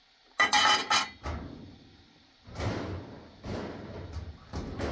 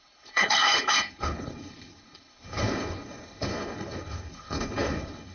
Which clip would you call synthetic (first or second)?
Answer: second